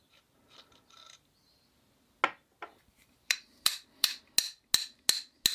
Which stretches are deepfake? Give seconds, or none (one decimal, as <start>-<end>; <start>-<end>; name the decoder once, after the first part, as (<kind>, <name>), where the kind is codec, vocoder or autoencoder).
2.7-4.2 (vocoder, BigVGAN v2)

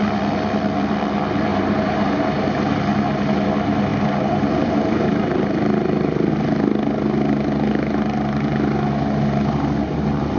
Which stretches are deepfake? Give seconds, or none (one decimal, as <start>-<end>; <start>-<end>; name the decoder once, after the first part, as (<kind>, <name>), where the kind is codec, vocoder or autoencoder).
1.5-2.7 (vocoder, BigVGAN v2); 3.9-6.3

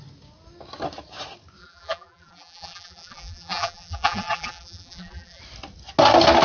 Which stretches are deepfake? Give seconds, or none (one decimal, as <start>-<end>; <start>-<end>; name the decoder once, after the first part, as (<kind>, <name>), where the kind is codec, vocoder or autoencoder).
1.6-5.4 (vocoder, BigVGAN v2)

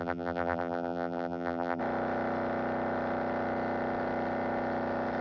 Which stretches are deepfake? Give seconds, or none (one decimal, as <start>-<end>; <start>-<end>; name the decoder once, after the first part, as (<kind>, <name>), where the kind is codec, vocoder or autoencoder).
0.0-1.8 (vocoder, BigVGAN v2)

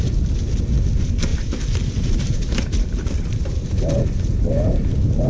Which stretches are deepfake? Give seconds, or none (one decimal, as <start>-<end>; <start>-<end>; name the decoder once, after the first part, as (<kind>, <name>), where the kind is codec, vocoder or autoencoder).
1.3-3.7 (vocoder, BigVGAN v2)

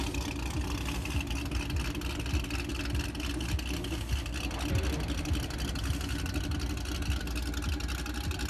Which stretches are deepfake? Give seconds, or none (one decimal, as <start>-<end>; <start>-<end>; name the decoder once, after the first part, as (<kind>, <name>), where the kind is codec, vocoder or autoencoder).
none

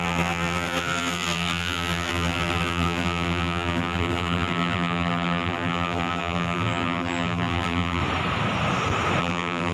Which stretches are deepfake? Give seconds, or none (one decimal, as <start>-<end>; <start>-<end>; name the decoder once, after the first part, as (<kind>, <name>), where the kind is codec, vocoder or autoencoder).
0.0-8.0 (vocoder, BigVGAN v2); 9.2-9.7